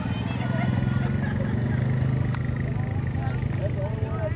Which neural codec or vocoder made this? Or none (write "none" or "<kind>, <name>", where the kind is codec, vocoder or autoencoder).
none